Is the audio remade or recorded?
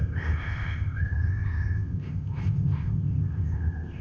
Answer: remade